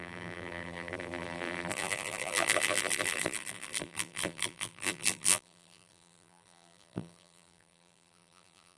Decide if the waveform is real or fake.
fake